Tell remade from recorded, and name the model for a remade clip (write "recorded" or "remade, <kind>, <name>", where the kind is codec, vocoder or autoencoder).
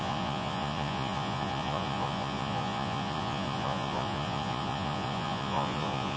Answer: remade, vocoder, Vocos